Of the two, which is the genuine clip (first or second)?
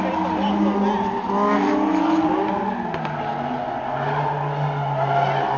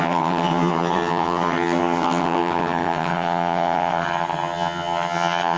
first